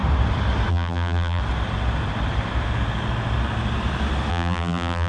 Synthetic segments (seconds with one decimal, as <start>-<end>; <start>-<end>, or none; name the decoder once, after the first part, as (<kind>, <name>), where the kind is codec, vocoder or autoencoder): 0.7-1.4 (vocoder, BigVGAN v2); 4.3-5.1